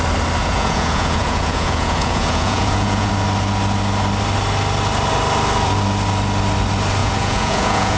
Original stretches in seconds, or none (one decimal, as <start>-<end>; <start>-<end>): 0.0-0.4; 3.1-7.0